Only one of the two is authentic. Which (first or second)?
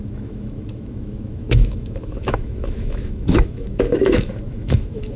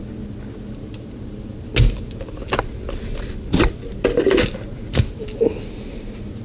second